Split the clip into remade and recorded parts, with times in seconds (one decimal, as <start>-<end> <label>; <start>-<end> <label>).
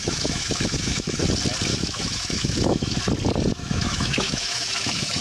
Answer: 0.0-1.2 remade; 1.2-1.7 recorded; 1.7-3.0 remade; 3.0-3.5 recorded; 3.5-5.2 remade